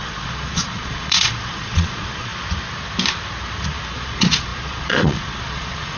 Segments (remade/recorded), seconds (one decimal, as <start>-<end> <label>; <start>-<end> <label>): 0.0-2.3 remade; 2.3-3.9 recorded; 3.9-6.0 remade